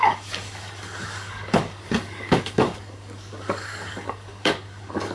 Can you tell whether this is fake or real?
fake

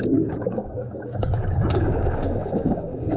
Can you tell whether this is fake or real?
fake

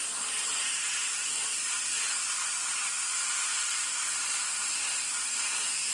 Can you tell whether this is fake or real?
real